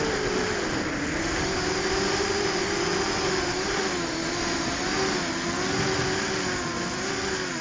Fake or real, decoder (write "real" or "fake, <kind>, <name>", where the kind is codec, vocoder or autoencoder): real